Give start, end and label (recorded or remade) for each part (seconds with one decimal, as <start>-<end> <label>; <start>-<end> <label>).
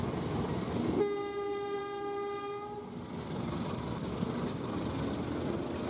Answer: 0.0-5.9 recorded